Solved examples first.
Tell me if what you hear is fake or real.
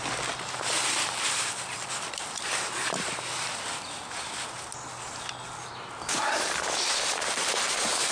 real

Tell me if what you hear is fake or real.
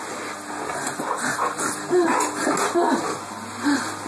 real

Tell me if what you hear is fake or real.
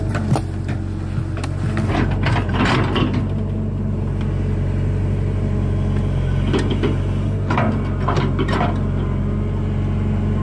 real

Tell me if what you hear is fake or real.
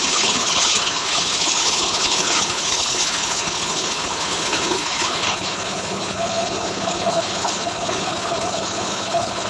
fake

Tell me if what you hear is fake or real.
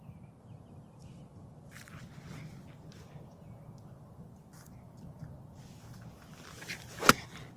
real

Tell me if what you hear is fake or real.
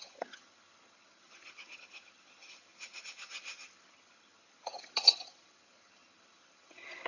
fake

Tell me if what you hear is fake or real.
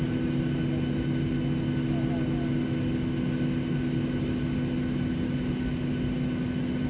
real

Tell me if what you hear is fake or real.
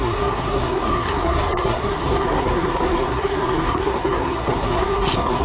fake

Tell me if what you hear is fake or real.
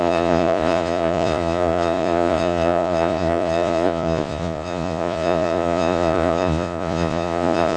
fake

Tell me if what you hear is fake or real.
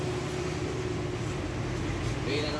fake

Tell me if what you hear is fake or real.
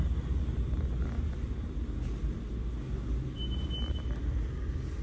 real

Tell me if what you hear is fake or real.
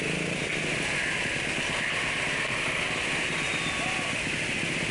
real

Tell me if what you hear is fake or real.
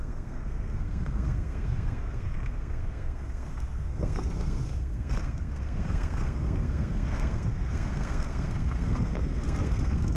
fake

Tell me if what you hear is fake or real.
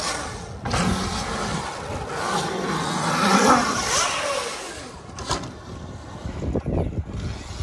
real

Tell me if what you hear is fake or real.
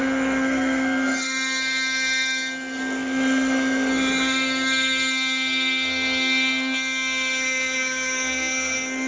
fake